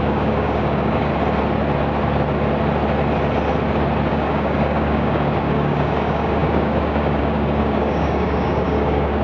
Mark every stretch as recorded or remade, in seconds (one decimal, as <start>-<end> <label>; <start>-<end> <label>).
0.0-1.1 remade; 1.1-4.1 recorded; 4.1-9.2 remade